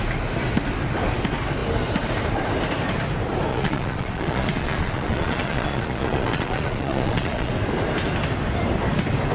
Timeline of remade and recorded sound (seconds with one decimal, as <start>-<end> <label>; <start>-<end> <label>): 0.0-3.5 recorded; 3.5-7.5 remade; 7.5-9.3 recorded